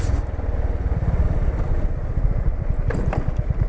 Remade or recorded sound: recorded